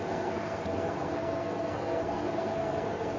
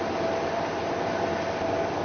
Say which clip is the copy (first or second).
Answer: first